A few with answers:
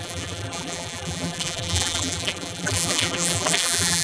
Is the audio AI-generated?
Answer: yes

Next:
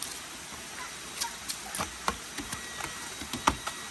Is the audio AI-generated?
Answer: no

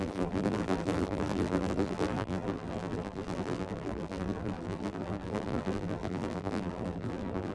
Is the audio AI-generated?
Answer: yes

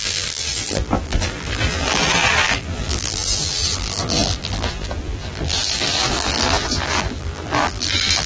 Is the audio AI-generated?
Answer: yes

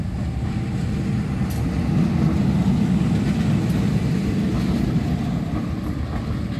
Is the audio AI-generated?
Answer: no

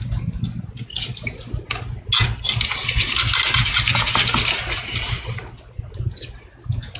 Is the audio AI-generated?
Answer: no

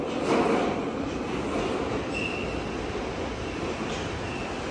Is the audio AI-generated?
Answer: no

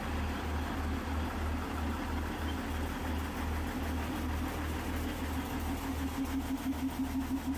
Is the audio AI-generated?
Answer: no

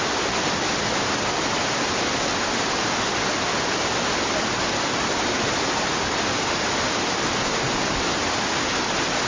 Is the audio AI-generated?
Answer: no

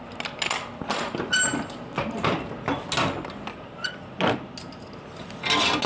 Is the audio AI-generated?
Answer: no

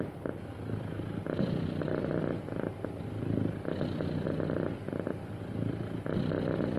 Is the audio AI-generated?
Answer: no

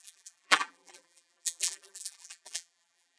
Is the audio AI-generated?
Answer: yes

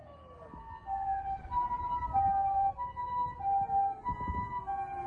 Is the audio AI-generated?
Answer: no